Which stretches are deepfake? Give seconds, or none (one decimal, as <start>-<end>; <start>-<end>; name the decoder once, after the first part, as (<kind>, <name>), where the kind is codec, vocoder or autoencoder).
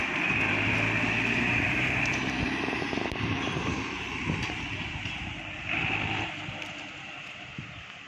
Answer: 1.5-6.2 (vocoder, BigVGAN v2); 7.2-8.1